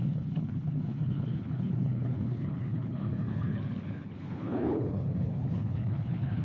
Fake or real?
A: fake